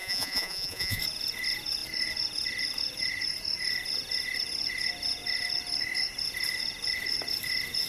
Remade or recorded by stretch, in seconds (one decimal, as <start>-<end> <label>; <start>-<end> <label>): 0.0-1.0 remade; 1.0-7.9 recorded